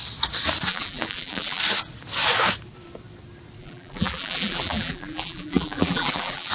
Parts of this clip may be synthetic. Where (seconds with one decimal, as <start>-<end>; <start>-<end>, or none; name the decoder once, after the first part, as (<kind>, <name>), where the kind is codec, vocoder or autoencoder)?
0.7-1.6 (vocoder, BigVGAN v2); 3.6-6.5